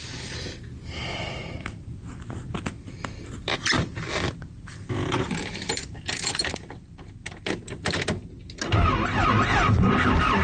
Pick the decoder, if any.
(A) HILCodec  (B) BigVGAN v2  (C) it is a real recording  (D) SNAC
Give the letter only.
C